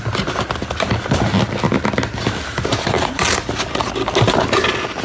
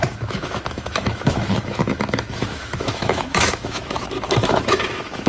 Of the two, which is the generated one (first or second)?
second